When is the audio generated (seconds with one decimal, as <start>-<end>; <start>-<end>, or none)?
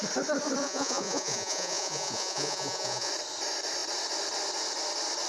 0.6-3.1